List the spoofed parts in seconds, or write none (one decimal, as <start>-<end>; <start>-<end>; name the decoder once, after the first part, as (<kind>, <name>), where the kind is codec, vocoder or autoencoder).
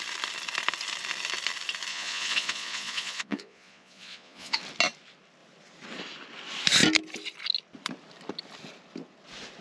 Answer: 1.9-4.6 (vocoder, Vocos)